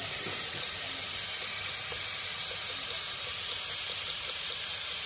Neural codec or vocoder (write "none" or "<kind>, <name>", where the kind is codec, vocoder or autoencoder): vocoder, BigVGAN v2